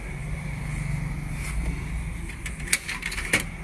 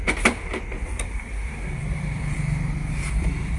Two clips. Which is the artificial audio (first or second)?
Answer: second